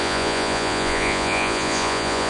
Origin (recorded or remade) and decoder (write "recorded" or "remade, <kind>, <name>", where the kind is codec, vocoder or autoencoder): remade, vocoder, Vocos